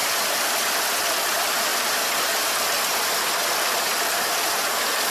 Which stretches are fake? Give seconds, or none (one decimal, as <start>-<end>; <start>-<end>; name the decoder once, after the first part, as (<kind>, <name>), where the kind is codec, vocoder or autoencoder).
0.0-0.5 (vocoder, BigVGAN v2)